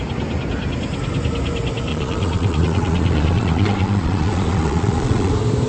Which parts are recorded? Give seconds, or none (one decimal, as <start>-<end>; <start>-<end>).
0.0-1.9; 5.3-5.7